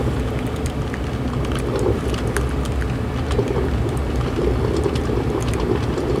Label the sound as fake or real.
real